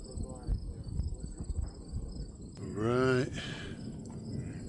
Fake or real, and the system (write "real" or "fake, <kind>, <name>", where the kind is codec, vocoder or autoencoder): real